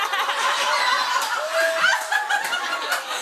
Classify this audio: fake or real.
real